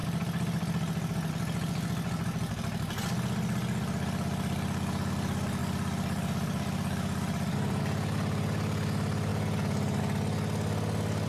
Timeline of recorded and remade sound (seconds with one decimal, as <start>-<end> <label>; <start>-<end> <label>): 0.0-5.6 recorded; 5.6-7.8 remade; 7.8-11.3 recorded